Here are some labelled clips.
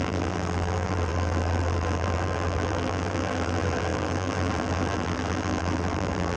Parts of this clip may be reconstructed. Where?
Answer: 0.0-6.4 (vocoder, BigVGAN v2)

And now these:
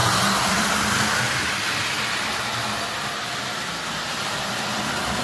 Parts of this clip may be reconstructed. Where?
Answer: 0.0-2.5 (vocoder, BigVGAN v2); 4.1-5.2

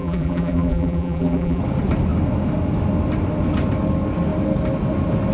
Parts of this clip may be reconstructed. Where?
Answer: 0.0-1.6 (vocoder, BigVGAN v2)

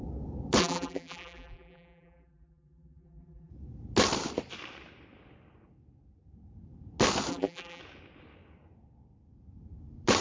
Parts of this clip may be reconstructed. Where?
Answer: 0.6-3.5 (vocoder, BigVGAN v2); 7.3-7.8

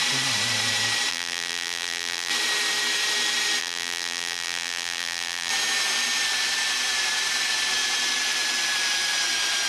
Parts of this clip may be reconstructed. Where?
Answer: 1.1-2.3 (vocoder, BigVGAN v2); 3.6-5.5

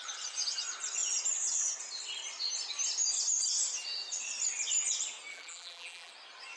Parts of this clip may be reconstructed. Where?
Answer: 5.3-6.1 (vocoder, BigVGAN v2)

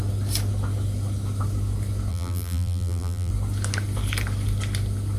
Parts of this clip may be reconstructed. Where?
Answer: 2.1-3.3 (vocoder, BigVGAN v2)

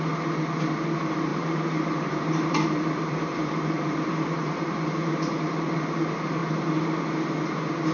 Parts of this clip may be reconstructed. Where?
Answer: 1.3-5.8 (vocoder, BigVGAN v2); 6.4-7.0